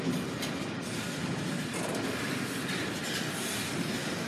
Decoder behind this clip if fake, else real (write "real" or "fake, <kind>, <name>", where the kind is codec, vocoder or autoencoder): real